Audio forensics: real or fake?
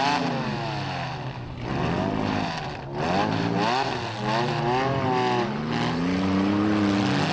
real